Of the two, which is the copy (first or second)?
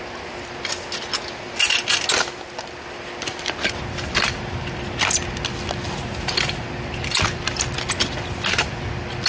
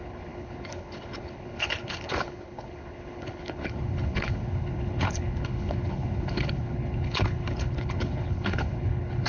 second